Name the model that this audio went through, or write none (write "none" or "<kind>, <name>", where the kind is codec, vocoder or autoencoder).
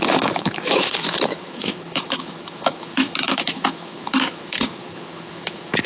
autoencoder, DAC-VAE